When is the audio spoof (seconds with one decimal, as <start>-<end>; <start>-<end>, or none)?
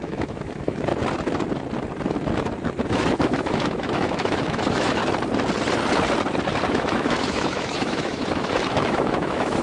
0.0-0.9; 2.9-5.0; 6.7-9.6